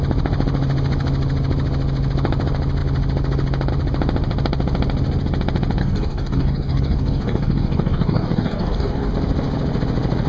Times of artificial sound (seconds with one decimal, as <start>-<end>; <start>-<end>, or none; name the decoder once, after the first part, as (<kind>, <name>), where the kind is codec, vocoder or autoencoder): 5.8-9.1 (codec, DAC)